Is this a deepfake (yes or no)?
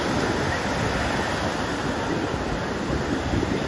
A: no